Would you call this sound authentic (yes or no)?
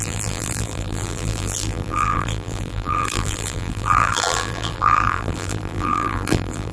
no